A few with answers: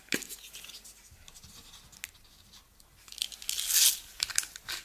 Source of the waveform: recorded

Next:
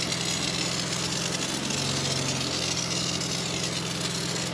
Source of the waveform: recorded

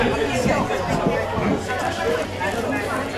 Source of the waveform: recorded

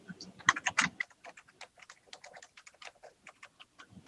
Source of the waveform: recorded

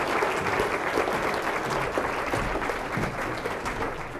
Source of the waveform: recorded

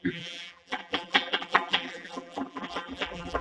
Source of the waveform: remade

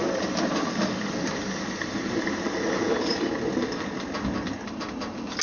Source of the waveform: recorded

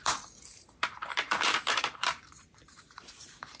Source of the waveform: remade